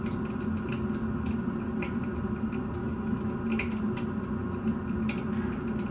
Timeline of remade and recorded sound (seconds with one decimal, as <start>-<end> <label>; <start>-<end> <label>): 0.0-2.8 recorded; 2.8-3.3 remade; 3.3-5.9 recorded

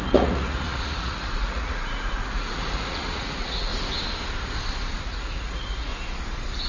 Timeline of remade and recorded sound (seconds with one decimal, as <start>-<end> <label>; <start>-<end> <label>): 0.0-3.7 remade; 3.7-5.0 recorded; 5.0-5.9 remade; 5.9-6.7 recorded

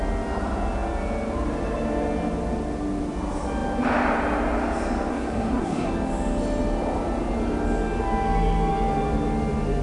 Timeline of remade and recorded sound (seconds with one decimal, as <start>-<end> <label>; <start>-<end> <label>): 0.0-5.1 recorded; 5.1-5.9 remade; 5.9-9.8 recorded